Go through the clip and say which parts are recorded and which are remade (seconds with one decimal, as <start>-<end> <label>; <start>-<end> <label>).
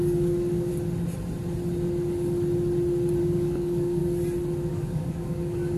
0.0-0.7 remade; 0.7-3.2 recorded; 3.2-4.0 remade; 4.0-4.7 recorded; 4.7-5.8 remade